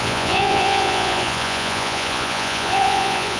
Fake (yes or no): yes